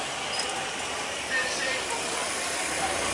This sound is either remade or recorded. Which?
recorded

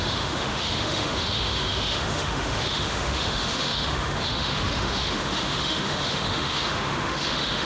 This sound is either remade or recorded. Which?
remade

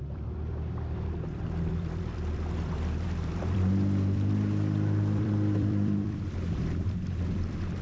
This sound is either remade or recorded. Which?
remade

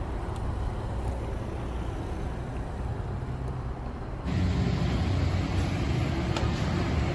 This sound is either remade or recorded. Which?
recorded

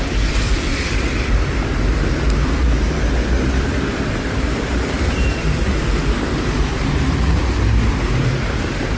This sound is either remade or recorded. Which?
remade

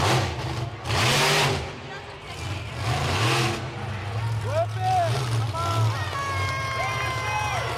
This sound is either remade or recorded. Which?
recorded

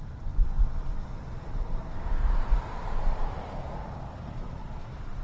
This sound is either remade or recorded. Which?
recorded